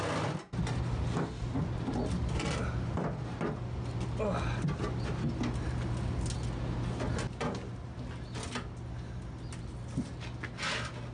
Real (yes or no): yes